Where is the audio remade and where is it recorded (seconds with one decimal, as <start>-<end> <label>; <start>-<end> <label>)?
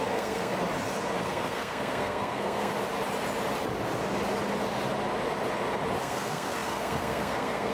0.0-0.5 remade; 0.5-1.2 recorded; 1.2-2.7 remade; 2.7-6.0 recorded; 6.0-7.7 remade